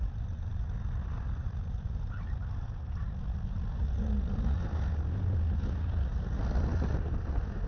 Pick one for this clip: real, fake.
real